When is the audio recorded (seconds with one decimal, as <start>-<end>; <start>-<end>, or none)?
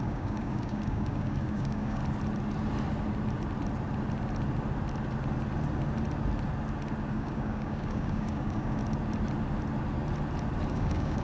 2.0-7.1; 8.8-10.7